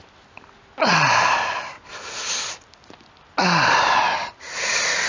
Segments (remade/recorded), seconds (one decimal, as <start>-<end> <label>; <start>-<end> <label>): 0.0-5.1 recorded